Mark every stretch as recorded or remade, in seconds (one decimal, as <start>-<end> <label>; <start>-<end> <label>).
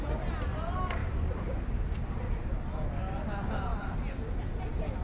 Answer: 0.0-1.0 recorded; 1.0-1.6 remade; 1.6-3.7 recorded; 3.7-4.2 remade; 4.2-5.0 recorded